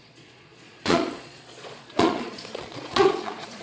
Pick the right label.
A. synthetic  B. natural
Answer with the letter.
A